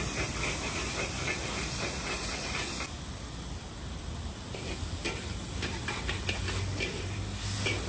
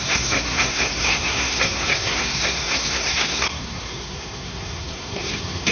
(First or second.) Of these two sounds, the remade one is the second